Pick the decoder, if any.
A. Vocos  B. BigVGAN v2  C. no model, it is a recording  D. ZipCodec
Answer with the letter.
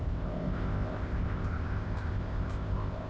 D